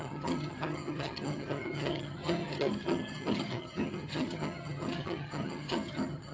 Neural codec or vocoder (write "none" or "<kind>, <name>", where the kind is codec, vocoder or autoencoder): vocoder, HiFi-GAN